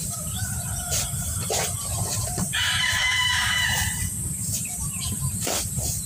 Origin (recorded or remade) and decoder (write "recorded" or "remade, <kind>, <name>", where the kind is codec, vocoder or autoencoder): remade, vocoder, BigVGAN v2